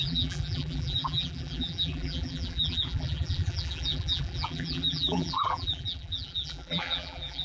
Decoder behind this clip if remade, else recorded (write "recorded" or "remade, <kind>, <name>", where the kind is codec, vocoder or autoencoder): remade, vocoder, BigVGAN v2